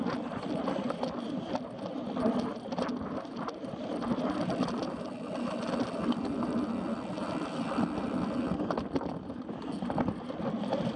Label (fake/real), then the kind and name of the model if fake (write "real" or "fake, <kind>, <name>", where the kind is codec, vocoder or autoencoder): real